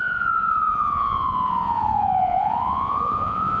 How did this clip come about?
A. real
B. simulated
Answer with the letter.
B